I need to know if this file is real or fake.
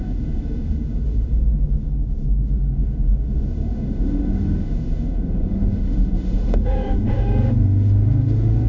fake